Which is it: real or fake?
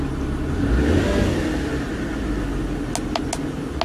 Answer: real